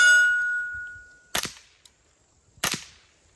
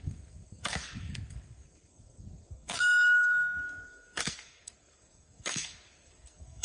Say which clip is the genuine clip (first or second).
first